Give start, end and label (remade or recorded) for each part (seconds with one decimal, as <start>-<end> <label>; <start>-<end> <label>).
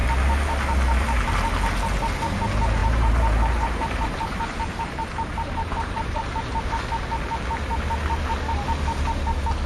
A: 0.0-2.8 recorded; 2.8-6.7 remade; 6.7-9.7 recorded